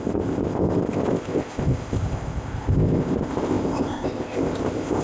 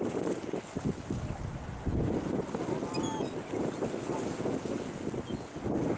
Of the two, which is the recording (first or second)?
second